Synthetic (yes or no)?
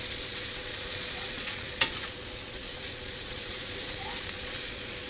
yes